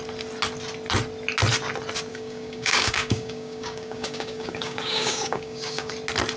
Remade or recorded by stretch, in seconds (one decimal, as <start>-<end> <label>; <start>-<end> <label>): 0.0-2.1 recorded; 2.1-5.9 remade; 5.9-6.4 recorded